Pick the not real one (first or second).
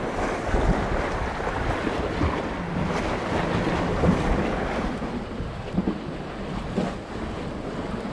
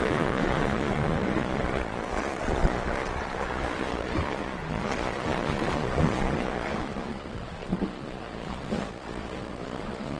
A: second